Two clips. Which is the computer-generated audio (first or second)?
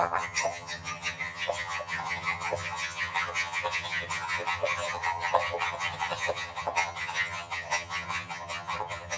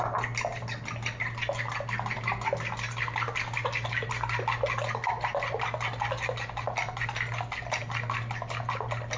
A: first